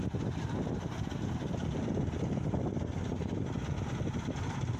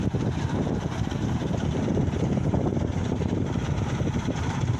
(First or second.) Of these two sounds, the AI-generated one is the second